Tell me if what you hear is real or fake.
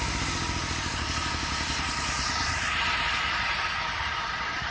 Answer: real